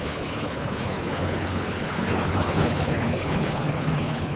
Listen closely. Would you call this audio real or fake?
fake